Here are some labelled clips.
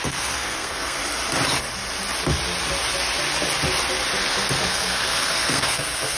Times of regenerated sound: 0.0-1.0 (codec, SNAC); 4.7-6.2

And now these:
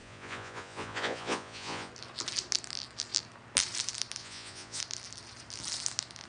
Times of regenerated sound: 0.0-1.9 (vocoder, Vocos); 4.2-4.8

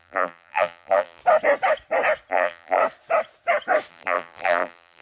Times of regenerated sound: 0.0-1.2 (vocoder, BigVGAN v2); 2.3-2.8; 3.9-5.0

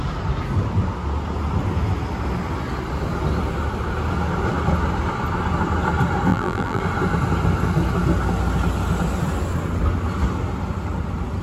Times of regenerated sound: 6.3-6.8 (vocoder, BigVGAN v2)

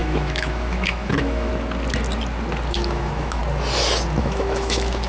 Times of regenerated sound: 0.0-1.5 (autoencoder, DAC-VAE); 2.7-3.4; 4.2-5.1

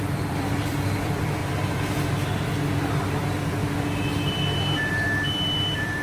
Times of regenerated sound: 0.0-1.4 (vocoder, BigVGAN v2); 2.9-3.6; 4.9-6.0

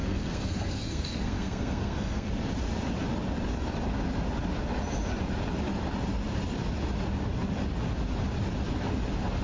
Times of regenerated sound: 0.0-2.3 (codec, SNAC)